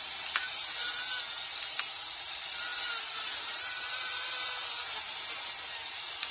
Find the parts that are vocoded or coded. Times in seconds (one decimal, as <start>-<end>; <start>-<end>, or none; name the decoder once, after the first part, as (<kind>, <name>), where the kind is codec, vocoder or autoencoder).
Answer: none